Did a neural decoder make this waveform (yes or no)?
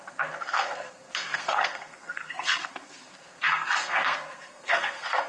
yes